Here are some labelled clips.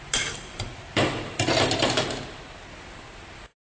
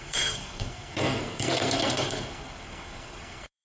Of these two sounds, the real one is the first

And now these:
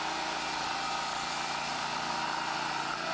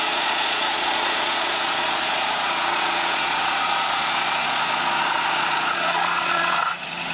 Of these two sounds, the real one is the first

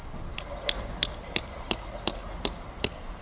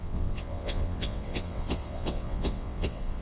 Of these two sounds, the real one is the first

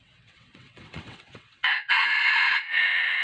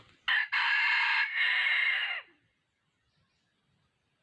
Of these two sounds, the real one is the second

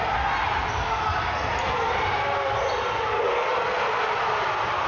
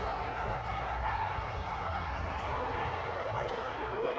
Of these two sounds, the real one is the first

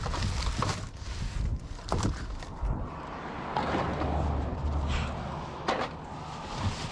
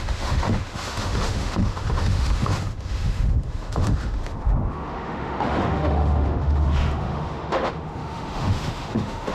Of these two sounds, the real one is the first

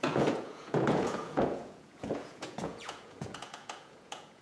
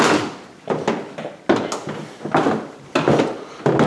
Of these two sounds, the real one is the second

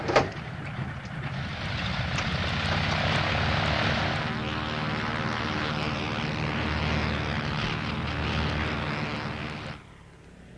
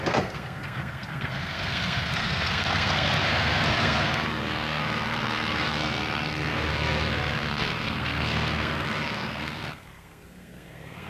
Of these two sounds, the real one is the first